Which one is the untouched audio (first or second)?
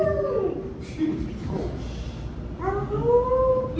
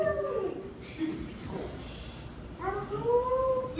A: first